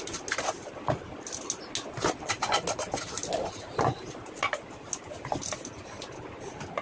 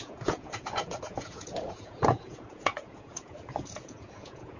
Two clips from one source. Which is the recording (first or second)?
first